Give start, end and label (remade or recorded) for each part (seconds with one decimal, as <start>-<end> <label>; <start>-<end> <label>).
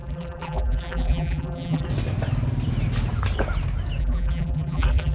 0.0-1.9 remade; 1.9-4.0 recorded; 4.0-5.1 remade